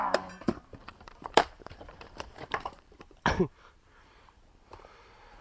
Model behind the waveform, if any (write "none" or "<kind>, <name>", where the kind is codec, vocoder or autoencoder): vocoder, BigVGAN v2